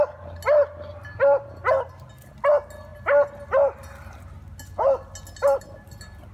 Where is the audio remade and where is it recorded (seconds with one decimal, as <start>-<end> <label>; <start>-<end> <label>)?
0.0-6.3 recorded